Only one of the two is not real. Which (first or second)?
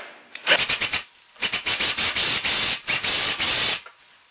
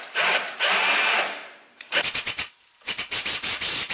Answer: second